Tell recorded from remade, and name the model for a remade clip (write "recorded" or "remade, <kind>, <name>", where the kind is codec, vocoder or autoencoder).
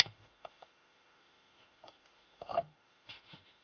remade, autoencoder, DAC-VAE